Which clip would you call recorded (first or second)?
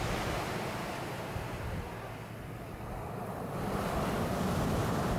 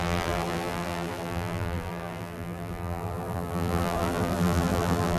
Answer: first